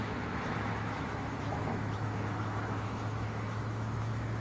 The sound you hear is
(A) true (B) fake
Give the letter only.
B